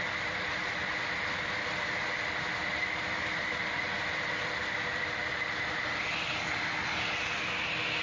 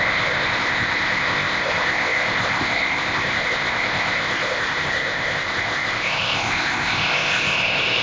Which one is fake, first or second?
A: second